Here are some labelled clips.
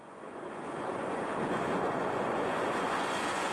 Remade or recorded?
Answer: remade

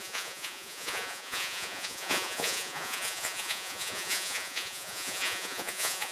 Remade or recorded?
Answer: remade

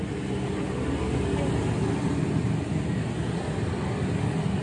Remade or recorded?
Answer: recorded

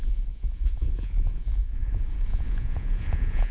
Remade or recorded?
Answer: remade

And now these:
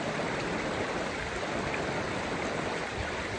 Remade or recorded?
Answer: recorded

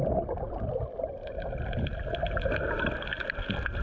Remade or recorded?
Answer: recorded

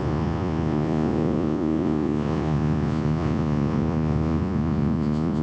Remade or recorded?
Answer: remade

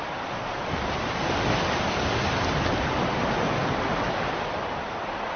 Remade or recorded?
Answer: recorded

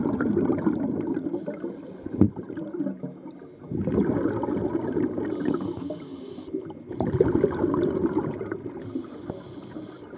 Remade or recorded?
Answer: recorded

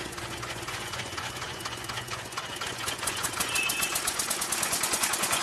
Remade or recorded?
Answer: remade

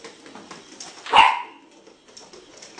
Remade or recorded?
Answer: recorded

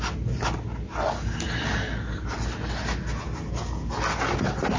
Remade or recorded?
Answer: recorded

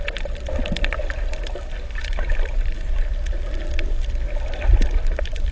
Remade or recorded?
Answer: recorded